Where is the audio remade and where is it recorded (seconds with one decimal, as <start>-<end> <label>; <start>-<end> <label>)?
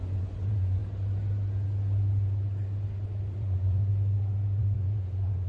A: 0.0-0.8 remade; 0.8-3.3 recorded; 3.3-3.8 remade; 3.8-4.6 recorded; 4.6-5.5 remade